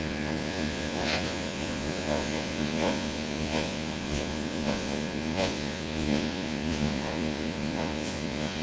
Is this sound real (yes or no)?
no